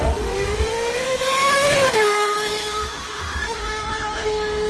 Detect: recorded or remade remade